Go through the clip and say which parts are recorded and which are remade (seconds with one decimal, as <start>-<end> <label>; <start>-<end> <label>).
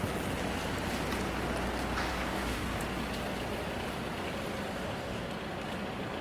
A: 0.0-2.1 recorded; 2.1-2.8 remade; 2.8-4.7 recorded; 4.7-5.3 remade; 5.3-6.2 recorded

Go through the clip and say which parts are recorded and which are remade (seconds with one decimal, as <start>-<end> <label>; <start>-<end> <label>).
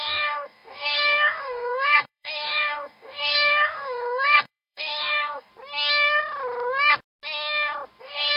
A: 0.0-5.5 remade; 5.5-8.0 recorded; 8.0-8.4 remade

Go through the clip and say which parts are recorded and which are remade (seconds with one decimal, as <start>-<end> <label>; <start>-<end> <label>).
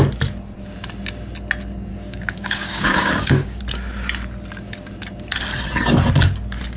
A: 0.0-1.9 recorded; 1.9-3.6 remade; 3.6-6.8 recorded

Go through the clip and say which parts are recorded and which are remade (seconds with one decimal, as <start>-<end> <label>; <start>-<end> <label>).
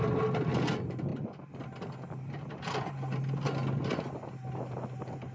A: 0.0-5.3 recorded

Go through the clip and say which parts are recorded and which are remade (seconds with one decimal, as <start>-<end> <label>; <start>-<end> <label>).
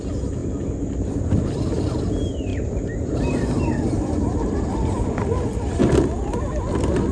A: 0.0-7.1 recorded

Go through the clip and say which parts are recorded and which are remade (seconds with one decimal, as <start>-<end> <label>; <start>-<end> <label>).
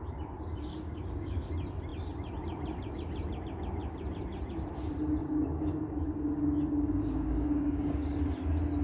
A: 0.0-0.7 recorded; 0.7-1.5 remade; 1.5-5.2 recorded; 5.2-8.2 remade; 8.2-8.8 recorded